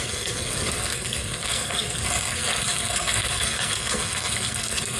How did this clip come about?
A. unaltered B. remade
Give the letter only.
B